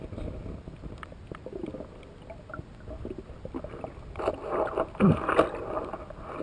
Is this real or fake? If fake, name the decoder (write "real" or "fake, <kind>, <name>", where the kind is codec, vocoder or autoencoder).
real